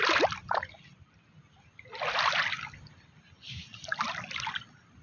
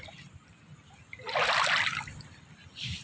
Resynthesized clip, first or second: second